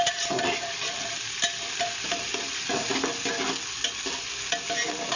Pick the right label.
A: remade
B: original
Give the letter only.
B